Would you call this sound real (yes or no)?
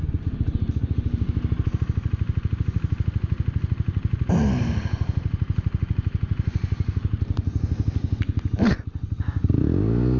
yes